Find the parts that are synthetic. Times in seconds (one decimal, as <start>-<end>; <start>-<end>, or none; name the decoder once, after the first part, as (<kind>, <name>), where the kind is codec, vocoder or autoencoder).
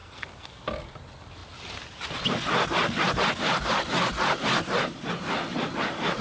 0.0-0.6 (codec, SNAC)